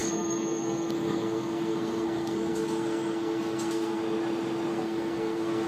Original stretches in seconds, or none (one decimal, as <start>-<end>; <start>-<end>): 4.0-4.7